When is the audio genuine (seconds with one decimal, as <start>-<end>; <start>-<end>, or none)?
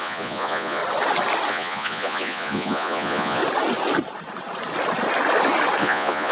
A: 0.8-1.5; 3.4-5.8